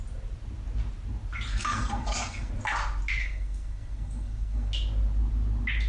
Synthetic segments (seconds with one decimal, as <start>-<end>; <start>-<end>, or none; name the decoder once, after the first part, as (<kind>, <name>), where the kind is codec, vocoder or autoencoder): 1.5-2.5 (codec, SNAC); 3.2-4.7